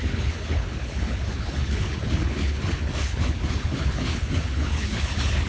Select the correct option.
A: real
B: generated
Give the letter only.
B